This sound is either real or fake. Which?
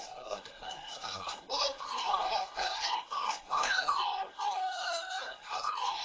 fake